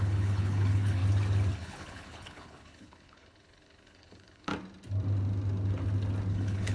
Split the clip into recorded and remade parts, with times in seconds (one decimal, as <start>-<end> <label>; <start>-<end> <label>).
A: 0.0-1.0 remade; 1.0-1.5 recorded; 1.5-4.5 remade; 4.5-6.3 recorded; 6.3-6.7 remade